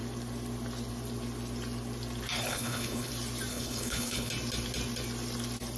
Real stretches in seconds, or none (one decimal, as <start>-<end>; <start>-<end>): 0.0-2.5; 3.1-3.5; 4.3-5.8